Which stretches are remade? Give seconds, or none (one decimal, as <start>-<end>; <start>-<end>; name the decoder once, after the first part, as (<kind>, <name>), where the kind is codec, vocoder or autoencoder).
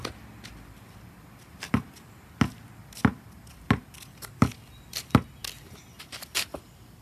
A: none